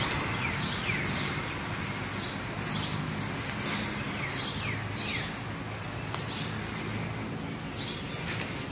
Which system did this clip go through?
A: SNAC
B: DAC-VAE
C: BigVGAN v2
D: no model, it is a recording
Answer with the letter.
D